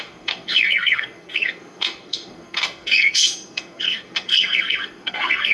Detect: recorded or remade remade